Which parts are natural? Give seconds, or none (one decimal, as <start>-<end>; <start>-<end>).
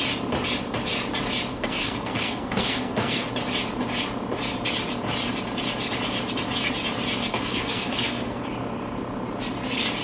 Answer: 0.0-1.5; 3.3-7.3; 8.4-10.0